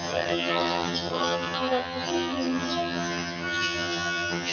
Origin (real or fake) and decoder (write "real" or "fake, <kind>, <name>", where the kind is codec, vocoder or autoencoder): fake, vocoder, HiFi-GAN